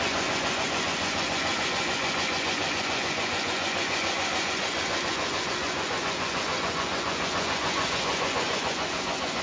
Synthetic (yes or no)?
yes